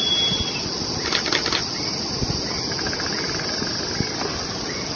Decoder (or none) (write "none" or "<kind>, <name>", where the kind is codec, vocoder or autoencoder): none